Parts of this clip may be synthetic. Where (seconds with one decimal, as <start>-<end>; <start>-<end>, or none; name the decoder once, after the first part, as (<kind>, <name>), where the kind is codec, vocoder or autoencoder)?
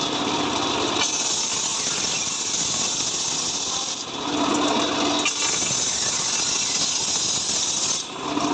1.7-4.5 (vocoder, BigVGAN v2)